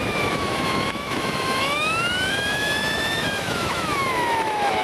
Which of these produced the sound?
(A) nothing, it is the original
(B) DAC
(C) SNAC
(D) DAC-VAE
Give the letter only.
D